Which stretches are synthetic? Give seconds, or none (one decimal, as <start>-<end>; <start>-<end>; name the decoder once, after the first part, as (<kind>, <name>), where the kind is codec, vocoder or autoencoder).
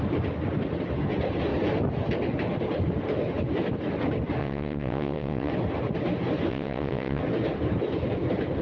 4.4-5.5 (vocoder, WaveNeXt); 6.5-7.2